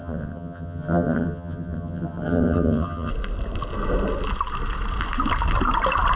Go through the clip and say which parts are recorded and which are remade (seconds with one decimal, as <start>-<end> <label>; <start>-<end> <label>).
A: 0.0-3.1 remade; 3.1-6.2 recorded